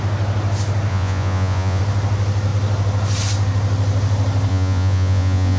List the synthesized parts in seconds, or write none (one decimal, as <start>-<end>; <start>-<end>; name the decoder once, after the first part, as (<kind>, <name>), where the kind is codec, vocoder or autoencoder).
0.9-1.8 (vocoder, Vocos); 4.5-5.6